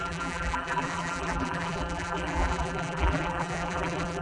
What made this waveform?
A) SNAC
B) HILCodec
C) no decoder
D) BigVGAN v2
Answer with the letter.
D